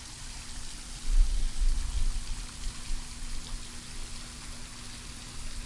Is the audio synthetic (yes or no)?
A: no